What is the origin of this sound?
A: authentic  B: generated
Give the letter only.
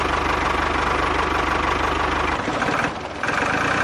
A